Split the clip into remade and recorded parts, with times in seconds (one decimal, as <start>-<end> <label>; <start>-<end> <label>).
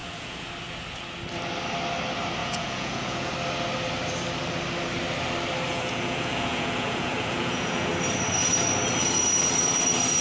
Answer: 0.0-0.5 remade; 0.5-2.4 recorded; 2.4-3.3 remade; 3.3-5.7 recorded; 5.7-7.9 remade; 7.9-10.2 recorded